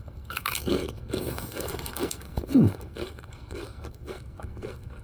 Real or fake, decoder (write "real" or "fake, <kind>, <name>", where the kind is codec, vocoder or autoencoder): fake, codec, SNAC